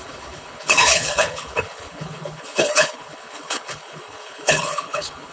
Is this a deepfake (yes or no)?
yes